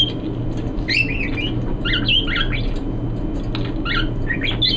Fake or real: real